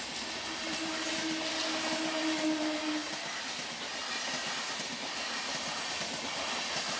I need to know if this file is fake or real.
real